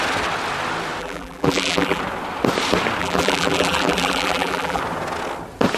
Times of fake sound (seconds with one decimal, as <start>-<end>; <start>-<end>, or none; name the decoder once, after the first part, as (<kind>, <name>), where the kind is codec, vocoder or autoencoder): 1.0-2.0 (vocoder, BigVGAN v2); 3.0-4.8